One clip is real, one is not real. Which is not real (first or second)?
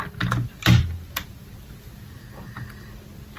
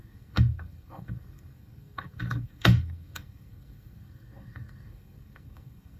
second